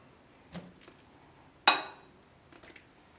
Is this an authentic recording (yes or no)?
yes